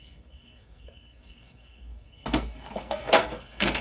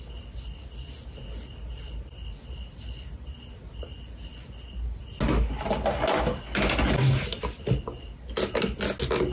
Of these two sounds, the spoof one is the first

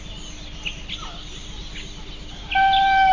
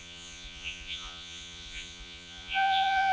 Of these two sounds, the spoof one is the second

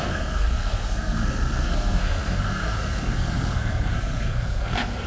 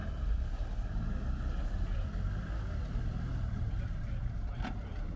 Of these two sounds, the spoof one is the first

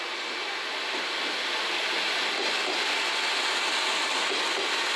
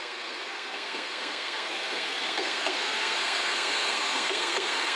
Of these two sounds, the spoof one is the second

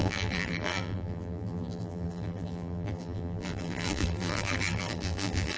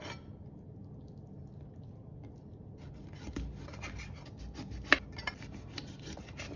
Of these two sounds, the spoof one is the first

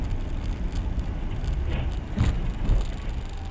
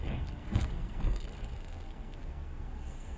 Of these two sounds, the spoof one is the second